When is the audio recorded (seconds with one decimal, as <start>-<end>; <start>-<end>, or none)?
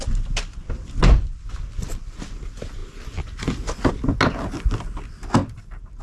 0.0-6.0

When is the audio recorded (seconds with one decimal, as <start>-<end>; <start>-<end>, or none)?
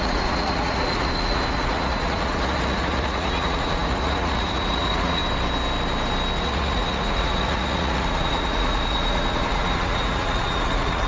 5.2-6.4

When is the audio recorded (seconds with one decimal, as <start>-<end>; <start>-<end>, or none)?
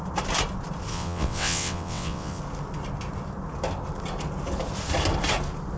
0.0-0.9; 2.4-5.8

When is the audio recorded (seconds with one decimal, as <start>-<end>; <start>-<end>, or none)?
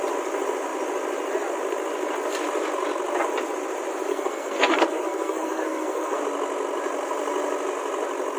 0.0-4.1; 6.2-8.4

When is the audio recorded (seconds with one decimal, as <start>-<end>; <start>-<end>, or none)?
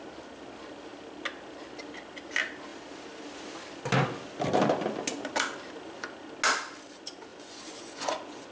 0.0-7.3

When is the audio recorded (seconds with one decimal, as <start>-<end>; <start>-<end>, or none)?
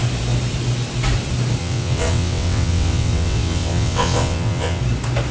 0.0-1.6; 4.8-5.3